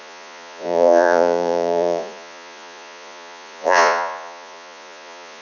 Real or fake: fake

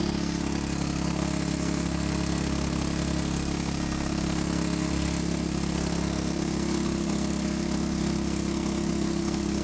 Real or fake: fake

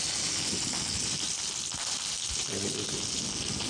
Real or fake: real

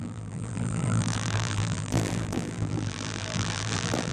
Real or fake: fake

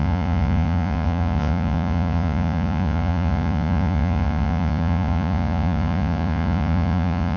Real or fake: fake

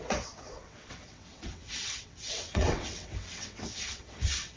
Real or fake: fake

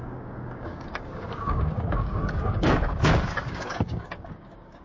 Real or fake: fake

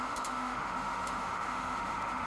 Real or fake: fake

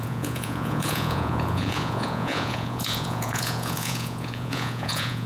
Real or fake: fake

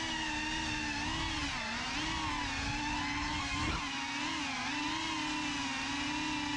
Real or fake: real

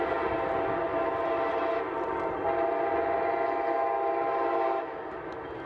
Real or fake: real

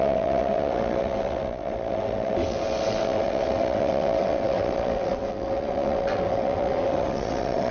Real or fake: fake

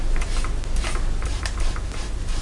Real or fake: real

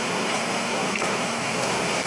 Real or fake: fake